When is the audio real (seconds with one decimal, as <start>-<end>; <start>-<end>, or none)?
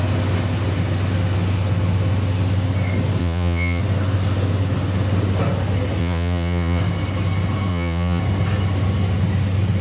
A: 0.0-3.2; 3.8-6.0; 6.8-7.7; 8.2-9.8